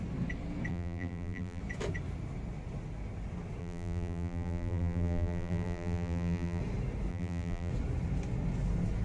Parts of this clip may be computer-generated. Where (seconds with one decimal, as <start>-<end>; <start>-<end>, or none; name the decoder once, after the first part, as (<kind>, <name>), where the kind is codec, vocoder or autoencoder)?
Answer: 0.7-1.6 (vocoder, BigVGAN v2); 3.6-6.6; 7.1-7.7